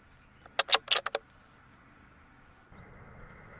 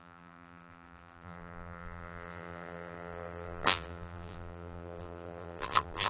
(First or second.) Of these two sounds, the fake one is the second